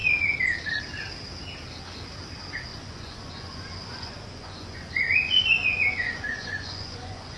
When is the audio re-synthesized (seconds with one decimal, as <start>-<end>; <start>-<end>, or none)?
2.7-7.4